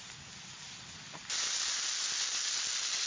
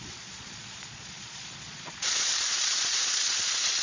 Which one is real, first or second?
first